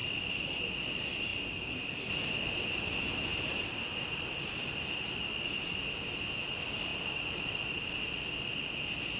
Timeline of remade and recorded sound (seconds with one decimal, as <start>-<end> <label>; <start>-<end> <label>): 0.0-0.6 remade; 0.6-3.3 recorded; 3.3-5.8 remade; 5.8-6.9 recorded; 6.9-8.0 remade; 8.0-9.2 recorded